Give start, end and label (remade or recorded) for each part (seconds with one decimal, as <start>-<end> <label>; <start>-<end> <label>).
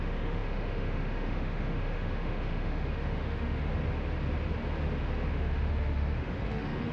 0.0-3.7 remade; 3.7-5.3 recorded; 5.3-6.9 remade